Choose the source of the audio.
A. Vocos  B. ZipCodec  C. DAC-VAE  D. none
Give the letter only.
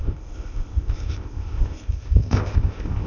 B